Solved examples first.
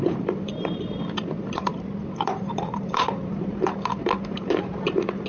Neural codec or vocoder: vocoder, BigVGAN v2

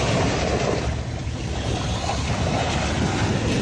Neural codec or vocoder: vocoder, BigVGAN v2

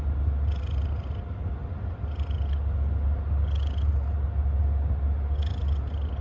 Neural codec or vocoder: none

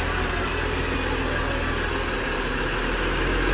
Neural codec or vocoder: none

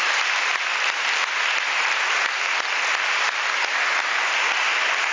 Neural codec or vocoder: none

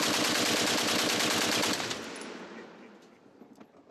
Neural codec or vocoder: none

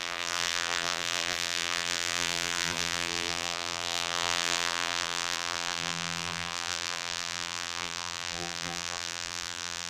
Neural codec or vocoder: vocoder, BigVGAN v2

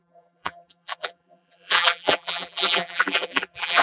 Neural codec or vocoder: vocoder, BigVGAN v2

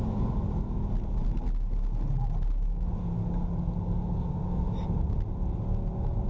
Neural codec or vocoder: none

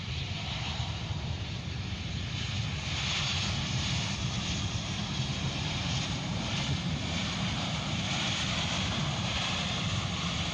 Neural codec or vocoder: vocoder, BigVGAN v2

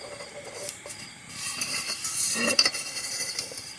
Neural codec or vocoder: vocoder, BigVGAN v2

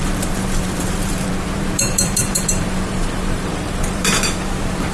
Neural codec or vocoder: vocoder, BigVGAN v2